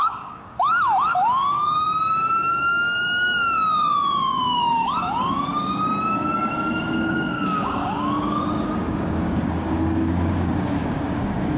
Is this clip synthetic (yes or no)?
yes